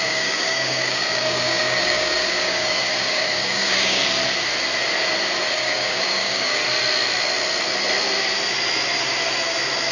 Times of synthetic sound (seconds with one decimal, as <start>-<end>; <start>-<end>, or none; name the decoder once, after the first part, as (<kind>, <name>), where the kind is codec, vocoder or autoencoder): 0.0-4.0 (codec, DAC); 5.5-6.6